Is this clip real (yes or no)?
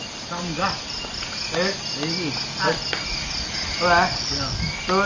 yes